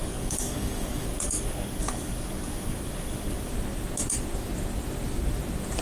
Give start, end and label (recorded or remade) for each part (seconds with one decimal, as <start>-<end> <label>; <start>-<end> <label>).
0.0-3.5 remade; 3.5-5.8 recorded